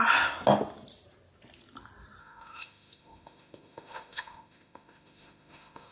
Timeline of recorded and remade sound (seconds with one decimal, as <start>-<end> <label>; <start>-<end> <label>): 0.0-2.2 recorded; 2.2-5.9 remade